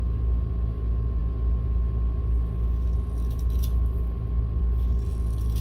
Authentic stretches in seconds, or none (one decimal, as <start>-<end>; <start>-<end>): 0.0-5.6